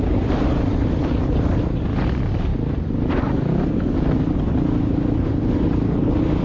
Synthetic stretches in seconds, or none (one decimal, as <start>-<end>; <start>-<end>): none